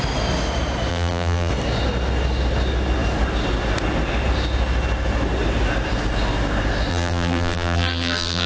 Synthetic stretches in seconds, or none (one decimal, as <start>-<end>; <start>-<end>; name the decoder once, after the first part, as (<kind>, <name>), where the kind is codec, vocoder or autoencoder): 0.9-1.5 (vocoder, BigVGAN v2); 6.9-8.5